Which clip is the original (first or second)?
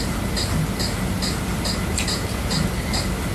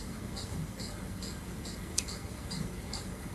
first